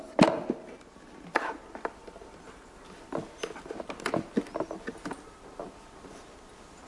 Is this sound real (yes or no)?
yes